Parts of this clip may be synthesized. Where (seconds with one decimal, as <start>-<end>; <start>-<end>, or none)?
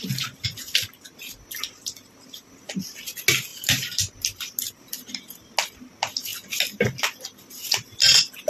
3.5-4.5